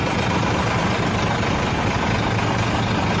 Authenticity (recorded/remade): recorded